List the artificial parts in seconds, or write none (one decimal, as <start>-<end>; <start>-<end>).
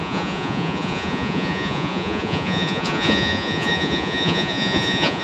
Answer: 0.0-5.2